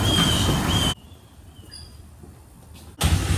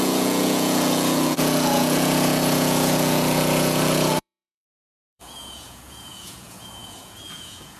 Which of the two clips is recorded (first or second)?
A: first